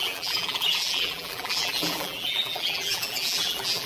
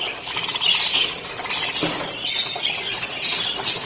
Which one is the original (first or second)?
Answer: second